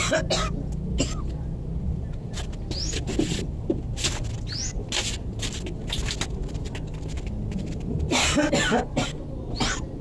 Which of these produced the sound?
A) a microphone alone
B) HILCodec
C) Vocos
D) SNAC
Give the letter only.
A